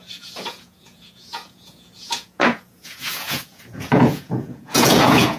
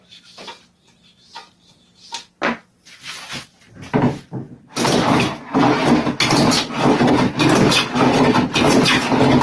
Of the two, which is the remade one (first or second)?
first